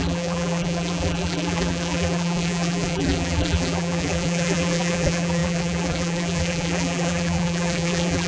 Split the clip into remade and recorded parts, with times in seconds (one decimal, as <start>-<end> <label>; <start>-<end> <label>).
0.0-8.3 remade